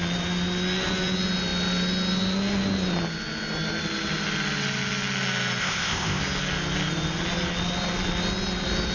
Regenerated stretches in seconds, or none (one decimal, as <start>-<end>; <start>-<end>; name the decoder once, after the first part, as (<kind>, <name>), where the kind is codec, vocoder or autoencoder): 5.6-6.2 (codec, ZipCodec)